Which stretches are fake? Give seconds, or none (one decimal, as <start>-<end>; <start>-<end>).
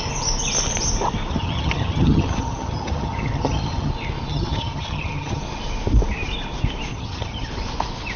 1.3-3.9; 4.3-5.4; 6.9-7.5